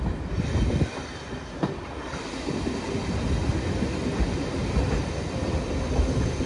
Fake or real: real